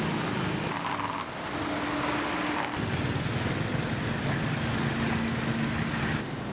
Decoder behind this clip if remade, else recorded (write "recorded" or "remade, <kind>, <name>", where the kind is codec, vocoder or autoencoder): recorded